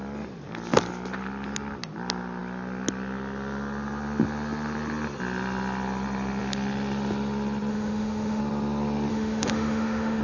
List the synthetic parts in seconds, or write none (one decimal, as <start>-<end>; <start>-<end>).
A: 7.7-8.4; 9.1-10.2